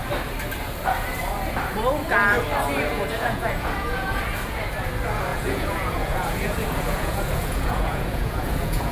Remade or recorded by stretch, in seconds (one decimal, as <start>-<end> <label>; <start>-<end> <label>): 0.0-2.9 recorded; 2.9-4.2 remade; 4.2-5.3 recorded; 5.3-8.9 remade